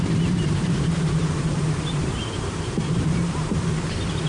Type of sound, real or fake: fake